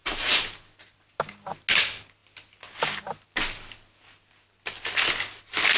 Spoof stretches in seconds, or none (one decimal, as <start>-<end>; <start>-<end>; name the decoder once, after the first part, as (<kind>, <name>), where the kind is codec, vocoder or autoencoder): none